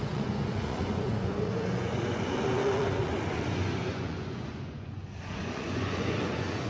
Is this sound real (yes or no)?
no